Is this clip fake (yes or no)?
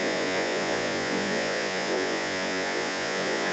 yes